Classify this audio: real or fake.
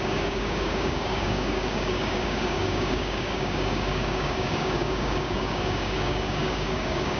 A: fake